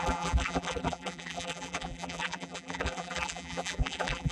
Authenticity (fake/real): fake